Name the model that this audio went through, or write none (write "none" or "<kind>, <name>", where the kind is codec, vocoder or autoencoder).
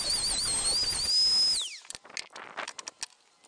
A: none